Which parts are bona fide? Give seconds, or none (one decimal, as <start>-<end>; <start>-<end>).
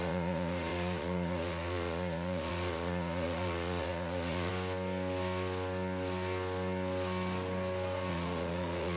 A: 4.5-8.1